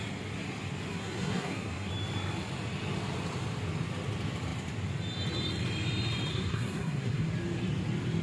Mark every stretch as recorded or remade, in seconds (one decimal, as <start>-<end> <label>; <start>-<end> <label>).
0.0-0.9 recorded; 0.9-1.9 remade; 1.9-6.3 recorded; 6.3-7.3 remade; 7.3-8.2 recorded